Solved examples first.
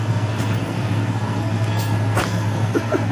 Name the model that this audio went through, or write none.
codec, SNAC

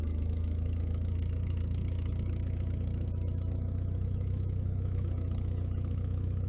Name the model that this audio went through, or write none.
autoencoder, DAC-VAE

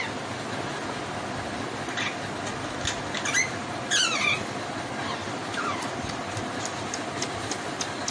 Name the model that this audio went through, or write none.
none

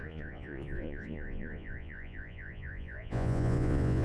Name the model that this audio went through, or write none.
vocoder, Vocos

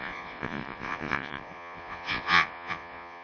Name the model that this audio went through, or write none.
vocoder, Vocos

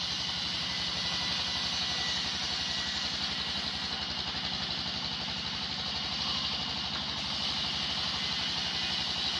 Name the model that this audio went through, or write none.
none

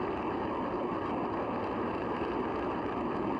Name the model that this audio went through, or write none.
none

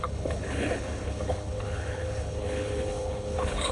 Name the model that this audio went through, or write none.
codec, HILCodec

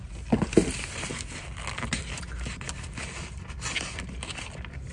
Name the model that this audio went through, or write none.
none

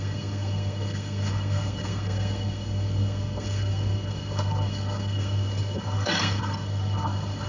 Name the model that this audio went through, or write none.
codec, SNAC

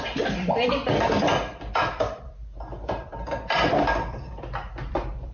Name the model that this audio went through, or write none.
vocoder, BigVGAN v2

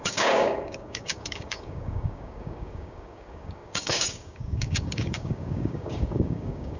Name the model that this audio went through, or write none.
codec, DAC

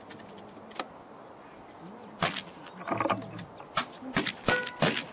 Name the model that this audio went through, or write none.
none